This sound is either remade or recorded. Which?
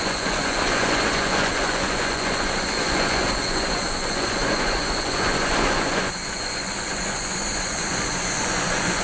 remade